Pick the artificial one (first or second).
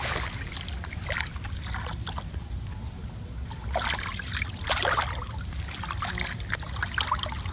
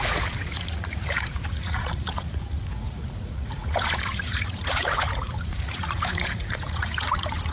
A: second